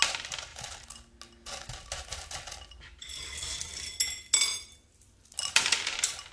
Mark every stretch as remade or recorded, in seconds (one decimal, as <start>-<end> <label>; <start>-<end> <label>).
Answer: 0.0-6.3 recorded